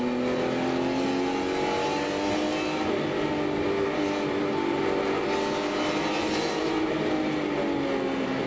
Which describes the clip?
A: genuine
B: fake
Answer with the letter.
A